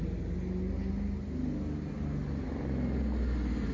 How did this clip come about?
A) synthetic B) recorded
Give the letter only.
B